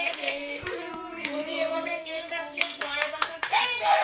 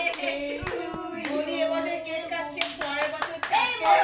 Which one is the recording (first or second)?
second